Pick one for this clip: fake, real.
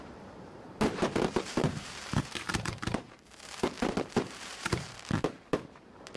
fake